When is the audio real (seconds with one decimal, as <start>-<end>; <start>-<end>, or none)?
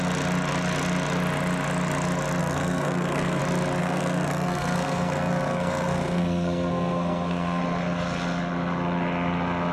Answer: 0.0-2.4; 3.4-3.8; 7.6-9.7